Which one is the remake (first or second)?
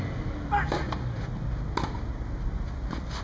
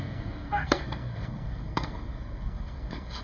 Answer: second